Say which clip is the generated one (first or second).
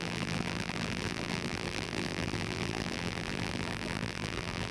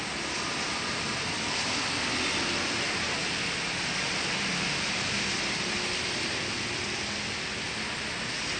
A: first